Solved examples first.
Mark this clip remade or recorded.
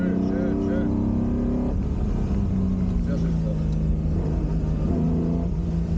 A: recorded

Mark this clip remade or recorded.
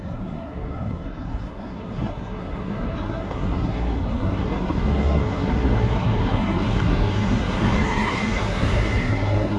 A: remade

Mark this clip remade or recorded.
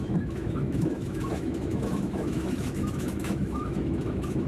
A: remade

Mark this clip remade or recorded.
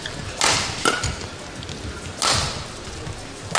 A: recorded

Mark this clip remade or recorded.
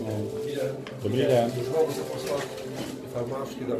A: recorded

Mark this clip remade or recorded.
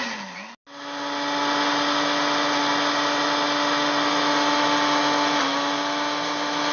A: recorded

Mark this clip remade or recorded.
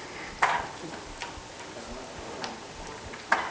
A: recorded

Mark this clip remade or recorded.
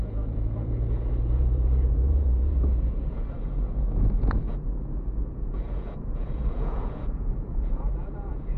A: remade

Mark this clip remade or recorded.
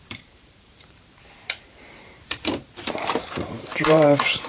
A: remade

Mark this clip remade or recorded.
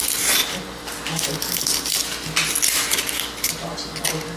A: recorded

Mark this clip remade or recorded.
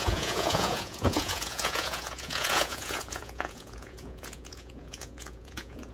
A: remade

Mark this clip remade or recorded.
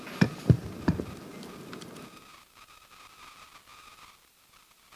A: recorded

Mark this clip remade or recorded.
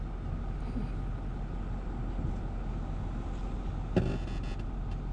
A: recorded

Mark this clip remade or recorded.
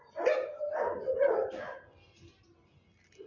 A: recorded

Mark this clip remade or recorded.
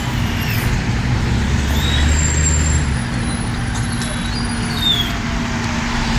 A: recorded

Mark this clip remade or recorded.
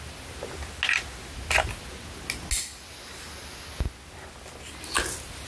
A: recorded